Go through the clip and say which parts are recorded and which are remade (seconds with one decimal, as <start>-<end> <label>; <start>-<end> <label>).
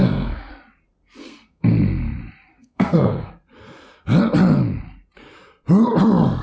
0.0-0.5 remade; 0.5-1.2 recorded; 1.2-1.7 remade; 1.7-2.5 recorded; 2.5-3.3 remade; 3.3-6.4 recorded